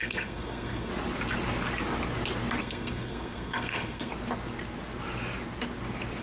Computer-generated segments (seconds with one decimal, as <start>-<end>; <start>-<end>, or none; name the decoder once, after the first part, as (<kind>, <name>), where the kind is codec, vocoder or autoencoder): 0.0-0.9 (codec, SNAC); 2.6-4.1